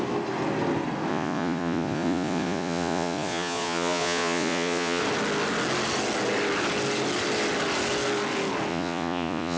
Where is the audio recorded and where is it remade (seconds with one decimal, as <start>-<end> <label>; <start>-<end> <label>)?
0.0-1.1 recorded; 1.1-5.0 remade; 5.0-8.7 recorded; 8.7-9.6 remade